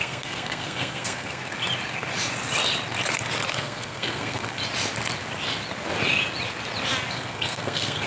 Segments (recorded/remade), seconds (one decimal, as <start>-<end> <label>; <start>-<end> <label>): 0.0-1.4 remade; 1.4-3.5 recorded; 3.5-4.6 remade; 4.6-7.1 recorded; 7.1-8.1 remade